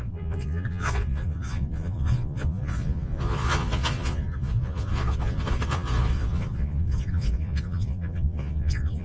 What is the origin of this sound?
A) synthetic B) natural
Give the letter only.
A